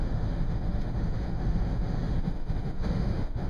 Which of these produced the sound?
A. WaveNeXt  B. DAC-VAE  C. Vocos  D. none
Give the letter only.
B